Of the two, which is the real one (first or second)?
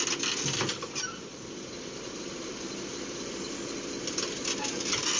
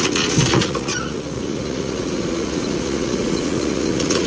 first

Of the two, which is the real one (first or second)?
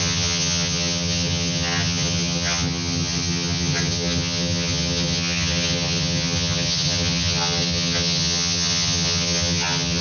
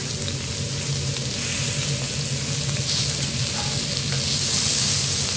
second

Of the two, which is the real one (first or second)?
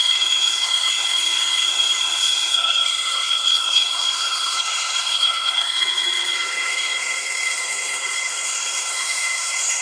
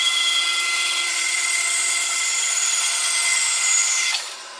second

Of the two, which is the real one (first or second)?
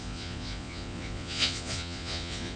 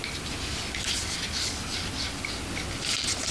second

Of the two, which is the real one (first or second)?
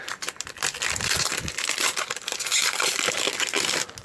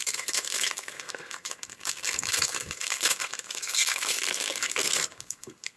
first